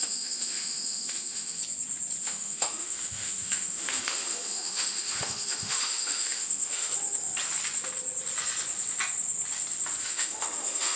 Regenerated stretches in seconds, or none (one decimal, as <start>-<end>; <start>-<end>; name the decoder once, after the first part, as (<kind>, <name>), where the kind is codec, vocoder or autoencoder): 0.0-1.6 (autoencoder, DAC-VAE); 2.2-6.9; 10.0-11.0